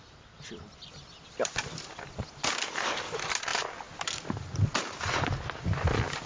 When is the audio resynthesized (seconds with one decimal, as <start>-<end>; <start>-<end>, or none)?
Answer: none